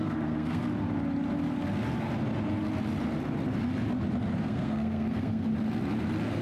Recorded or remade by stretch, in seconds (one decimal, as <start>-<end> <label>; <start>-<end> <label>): 0.0-0.6 remade; 0.6-4.4 recorded; 4.4-5.5 remade; 5.5-6.4 recorded